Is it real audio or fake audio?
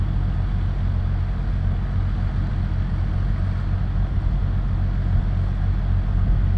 real